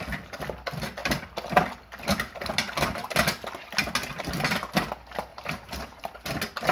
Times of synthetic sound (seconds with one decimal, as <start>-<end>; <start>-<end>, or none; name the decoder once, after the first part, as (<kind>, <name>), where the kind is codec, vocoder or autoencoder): 5.3-6.0 (vocoder, BigVGAN v2)

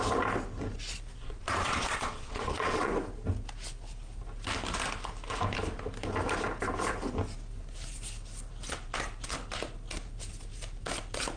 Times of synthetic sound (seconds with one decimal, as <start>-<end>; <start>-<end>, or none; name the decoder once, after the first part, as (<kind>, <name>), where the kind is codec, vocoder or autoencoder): 1.1-2.9 (vocoder, Vocos)

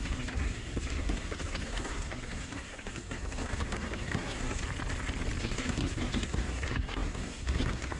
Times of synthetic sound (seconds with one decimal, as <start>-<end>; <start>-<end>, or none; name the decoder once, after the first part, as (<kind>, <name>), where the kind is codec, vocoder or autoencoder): 0.0-4.6 (codec, SNAC); 5.4-8.0